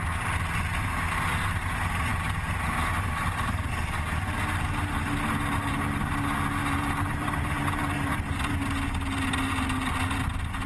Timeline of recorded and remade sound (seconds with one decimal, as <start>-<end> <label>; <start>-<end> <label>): 0.0-6.6 recorded; 6.6-8.5 remade; 8.5-10.7 recorded